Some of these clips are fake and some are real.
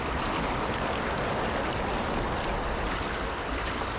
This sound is real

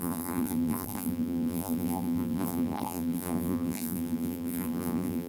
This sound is fake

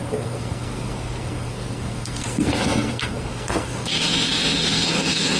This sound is fake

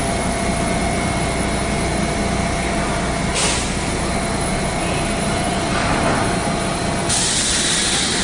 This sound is real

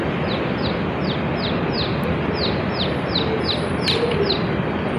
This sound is real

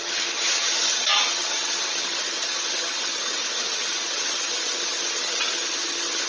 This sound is fake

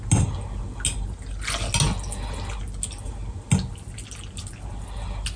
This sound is real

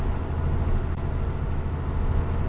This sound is real